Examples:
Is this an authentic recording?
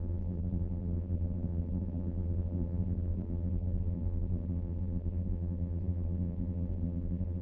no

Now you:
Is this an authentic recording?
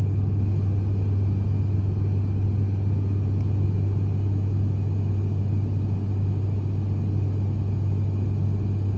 yes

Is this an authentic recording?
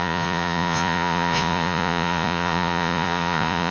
no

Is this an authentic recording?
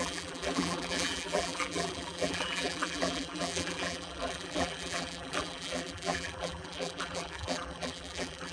no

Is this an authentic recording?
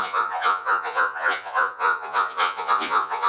no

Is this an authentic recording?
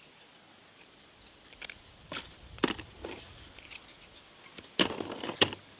yes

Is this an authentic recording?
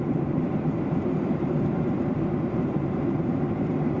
no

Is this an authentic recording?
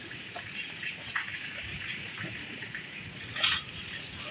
no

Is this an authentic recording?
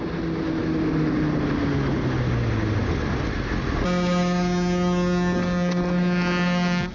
yes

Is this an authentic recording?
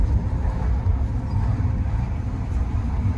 yes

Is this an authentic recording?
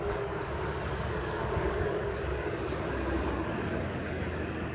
no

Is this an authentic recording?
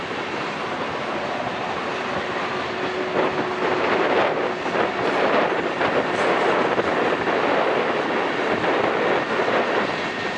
yes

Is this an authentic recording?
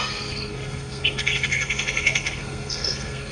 no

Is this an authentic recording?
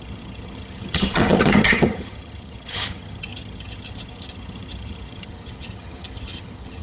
no